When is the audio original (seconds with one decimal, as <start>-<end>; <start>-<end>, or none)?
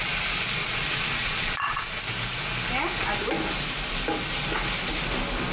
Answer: 0.0-0.6; 2.0-5.5